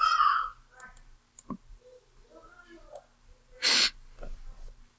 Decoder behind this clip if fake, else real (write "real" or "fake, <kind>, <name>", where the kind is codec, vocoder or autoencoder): real